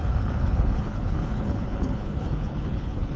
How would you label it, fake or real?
fake